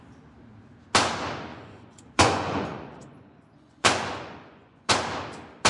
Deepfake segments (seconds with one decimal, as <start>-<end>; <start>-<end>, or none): 1.5-4.9